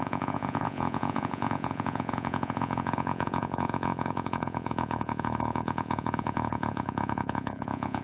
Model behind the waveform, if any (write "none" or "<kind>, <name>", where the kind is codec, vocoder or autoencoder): vocoder, Vocos